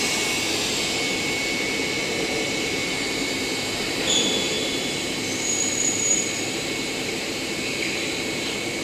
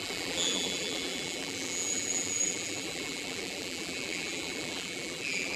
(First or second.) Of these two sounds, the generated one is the second